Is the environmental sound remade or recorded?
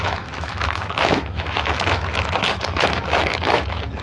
remade